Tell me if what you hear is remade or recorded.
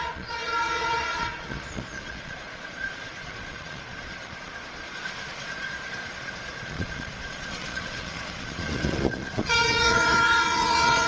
remade